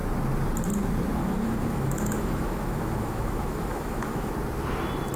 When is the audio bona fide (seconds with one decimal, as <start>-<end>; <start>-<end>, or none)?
0.0-1.2; 4.3-5.2